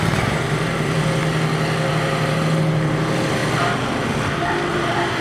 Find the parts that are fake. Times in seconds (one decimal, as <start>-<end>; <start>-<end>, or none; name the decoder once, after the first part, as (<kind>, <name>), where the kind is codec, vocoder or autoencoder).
0.0-1.2 (vocoder, BigVGAN v2); 1.9-3.4; 4.7-5.2